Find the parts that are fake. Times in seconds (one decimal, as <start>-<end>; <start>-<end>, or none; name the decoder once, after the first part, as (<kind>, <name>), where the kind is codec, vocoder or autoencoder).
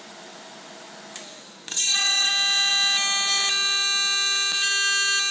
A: 1.7-2.3 (vocoder, WaveNeXt)